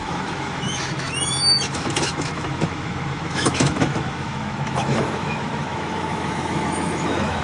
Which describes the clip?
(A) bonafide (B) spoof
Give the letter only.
B